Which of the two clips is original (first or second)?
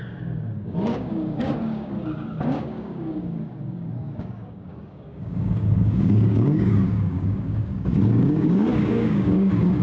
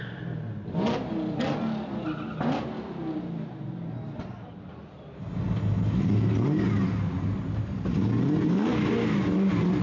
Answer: second